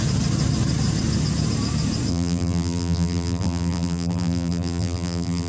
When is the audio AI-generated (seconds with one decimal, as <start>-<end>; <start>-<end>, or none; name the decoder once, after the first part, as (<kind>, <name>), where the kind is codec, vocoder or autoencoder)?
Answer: 2.1-5.5 (vocoder, BigVGAN v2)